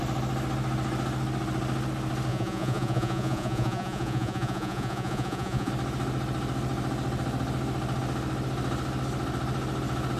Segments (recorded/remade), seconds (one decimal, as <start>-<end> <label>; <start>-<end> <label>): 0.0-2.3 recorded; 2.3-5.7 remade; 5.7-10.2 recorded